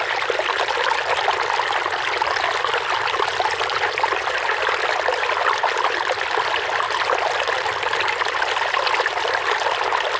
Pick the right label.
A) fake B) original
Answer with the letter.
B